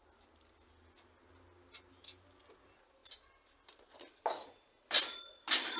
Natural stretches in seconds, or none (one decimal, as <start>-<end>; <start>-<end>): 0.0-5.8